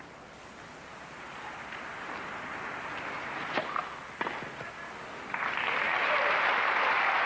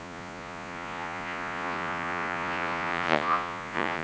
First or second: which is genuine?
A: first